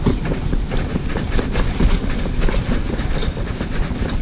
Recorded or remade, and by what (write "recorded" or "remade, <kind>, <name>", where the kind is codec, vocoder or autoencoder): recorded